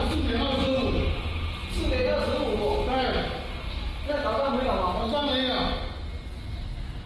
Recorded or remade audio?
recorded